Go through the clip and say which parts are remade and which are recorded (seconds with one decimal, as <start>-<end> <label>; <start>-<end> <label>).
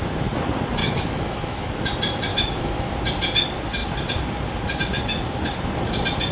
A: 0.0-0.8 recorded; 0.8-1.7 remade; 1.7-2.3 recorded; 2.3-2.9 remade; 2.9-6.3 recorded